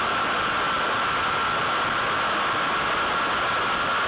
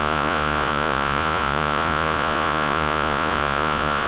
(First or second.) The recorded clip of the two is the first